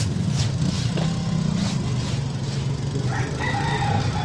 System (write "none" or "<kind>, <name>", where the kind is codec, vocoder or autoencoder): none